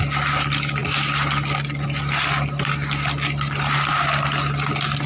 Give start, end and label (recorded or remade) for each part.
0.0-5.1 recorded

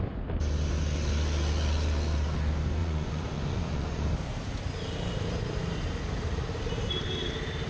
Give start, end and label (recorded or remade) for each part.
0.0-2.8 recorded; 2.8-4.0 remade; 4.0-7.7 recorded

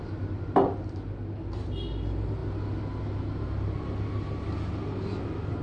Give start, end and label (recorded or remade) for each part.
0.0-5.6 recorded

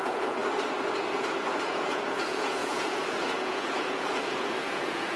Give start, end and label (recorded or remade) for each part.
0.0-0.4 remade; 0.4-1.7 recorded; 1.7-5.2 remade

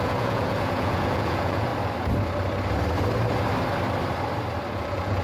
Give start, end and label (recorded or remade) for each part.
0.0-1.7 remade; 1.7-4.7 recorded; 4.7-5.2 remade

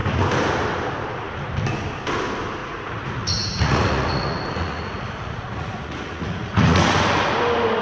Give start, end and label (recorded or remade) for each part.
0.0-2.6 recorded; 2.6-7.3 remade; 7.3-7.8 recorded

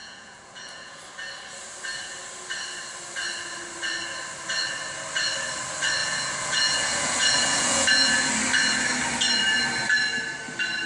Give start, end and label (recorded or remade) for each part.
0.0-1.0 remade; 1.0-6.0 recorded; 6.0-8.3 remade; 8.3-10.9 recorded